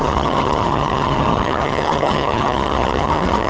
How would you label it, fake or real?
fake